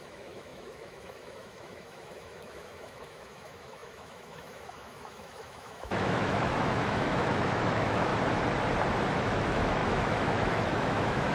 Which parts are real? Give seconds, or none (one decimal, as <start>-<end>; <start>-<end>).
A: 8.1-9.2